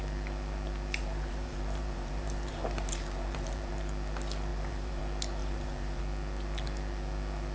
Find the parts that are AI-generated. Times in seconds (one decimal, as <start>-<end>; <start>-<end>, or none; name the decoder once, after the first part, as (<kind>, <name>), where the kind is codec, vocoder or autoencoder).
1.0-3.7 (vocoder, BigVGAN v2); 4.5-5.0; 5.4-6.0